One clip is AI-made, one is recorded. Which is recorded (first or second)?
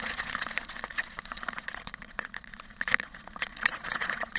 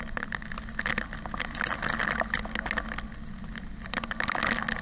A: second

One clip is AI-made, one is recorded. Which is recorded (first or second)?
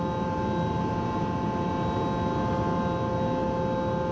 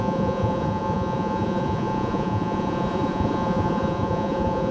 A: first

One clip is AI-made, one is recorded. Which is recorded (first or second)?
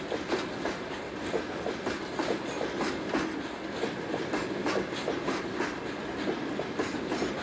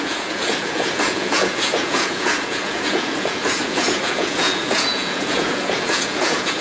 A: first